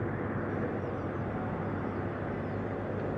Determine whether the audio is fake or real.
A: real